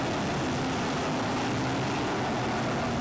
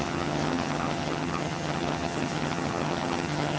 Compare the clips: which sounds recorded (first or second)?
first